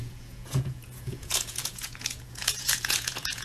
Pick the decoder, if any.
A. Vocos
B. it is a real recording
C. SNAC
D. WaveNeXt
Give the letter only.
A